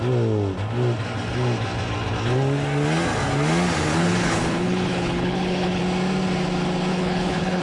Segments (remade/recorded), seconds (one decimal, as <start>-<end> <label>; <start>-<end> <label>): 0.0-3.9 recorded; 3.9-5.8 remade; 5.8-6.9 recorded; 6.9-7.6 remade